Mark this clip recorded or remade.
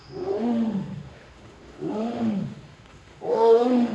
remade